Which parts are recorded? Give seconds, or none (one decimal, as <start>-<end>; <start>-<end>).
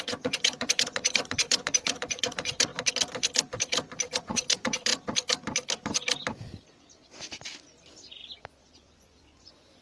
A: 2.7-4.2; 4.9-8.4